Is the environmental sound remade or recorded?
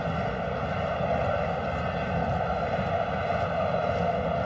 recorded